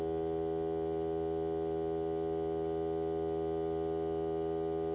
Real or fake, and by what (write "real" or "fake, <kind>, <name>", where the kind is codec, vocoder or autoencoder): real